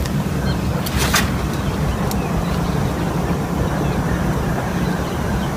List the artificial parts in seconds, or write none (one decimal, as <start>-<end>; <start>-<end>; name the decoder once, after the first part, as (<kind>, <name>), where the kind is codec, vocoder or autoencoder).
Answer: 0.0-0.7 (vocoder, BigVGAN v2); 1.5-1.9; 4.3-5.6

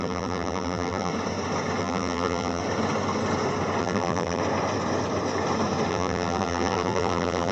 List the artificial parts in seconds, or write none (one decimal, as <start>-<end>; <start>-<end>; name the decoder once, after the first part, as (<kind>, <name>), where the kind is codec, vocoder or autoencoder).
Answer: 0.0-1.1 (vocoder, BigVGAN v2); 1.8-2.6; 3.8-4.4; 5.9-7.5

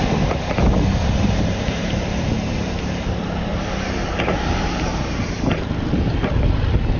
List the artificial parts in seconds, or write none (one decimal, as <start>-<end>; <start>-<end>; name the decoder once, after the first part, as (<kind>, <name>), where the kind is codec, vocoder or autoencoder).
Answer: 0.0-0.7 (vocoder, BigVGAN v2); 1.2-7.0

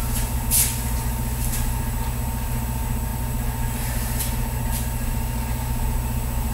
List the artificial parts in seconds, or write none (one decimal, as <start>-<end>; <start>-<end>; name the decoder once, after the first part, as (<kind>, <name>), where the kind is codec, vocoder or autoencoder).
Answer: none

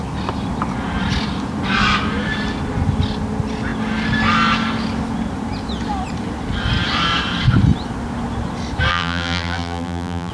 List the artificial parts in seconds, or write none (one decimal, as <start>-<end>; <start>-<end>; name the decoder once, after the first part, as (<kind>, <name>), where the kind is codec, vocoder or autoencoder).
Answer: 8.9-10.3 (vocoder, BigVGAN v2)